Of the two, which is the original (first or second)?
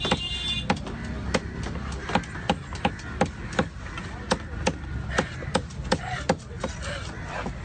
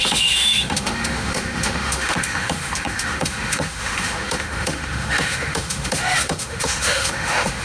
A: first